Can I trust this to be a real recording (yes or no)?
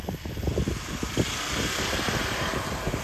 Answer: yes